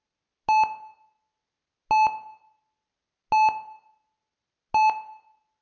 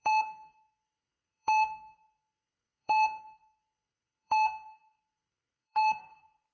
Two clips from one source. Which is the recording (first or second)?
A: first